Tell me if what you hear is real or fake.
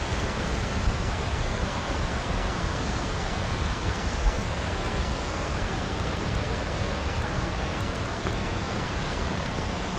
fake